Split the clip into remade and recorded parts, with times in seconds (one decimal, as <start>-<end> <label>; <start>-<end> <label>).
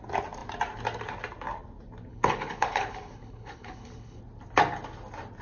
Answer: 0.0-2.1 recorded; 2.1-4.2 remade; 4.2-5.4 recorded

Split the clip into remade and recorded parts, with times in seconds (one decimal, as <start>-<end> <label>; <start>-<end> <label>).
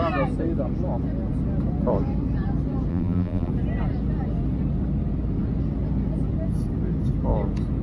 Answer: 0.0-2.9 recorded; 2.9-3.5 remade; 3.5-7.8 recorded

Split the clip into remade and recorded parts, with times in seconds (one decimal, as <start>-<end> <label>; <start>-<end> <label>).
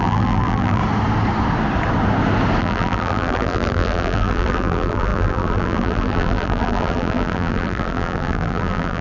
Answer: 0.0-0.8 remade; 0.8-2.6 recorded; 2.6-9.0 remade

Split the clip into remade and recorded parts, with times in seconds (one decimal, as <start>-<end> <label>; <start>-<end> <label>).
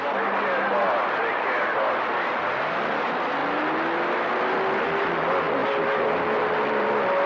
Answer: 0.0-5.6 recorded; 5.6-6.1 remade; 6.1-7.3 recorded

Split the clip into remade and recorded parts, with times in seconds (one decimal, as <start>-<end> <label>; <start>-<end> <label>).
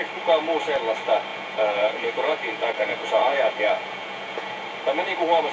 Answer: 0.0-1.3 recorded; 1.3-4.6 remade; 4.6-5.5 recorded